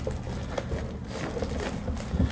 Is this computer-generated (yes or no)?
no